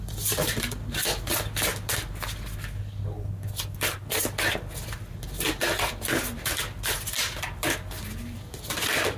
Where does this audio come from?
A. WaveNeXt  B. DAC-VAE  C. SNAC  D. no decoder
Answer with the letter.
D